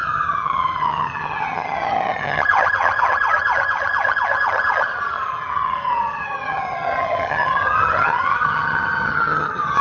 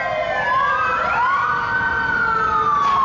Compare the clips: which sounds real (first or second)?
second